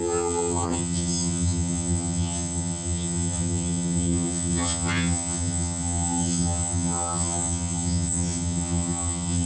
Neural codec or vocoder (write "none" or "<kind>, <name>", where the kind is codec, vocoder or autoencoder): vocoder, HiFi-GAN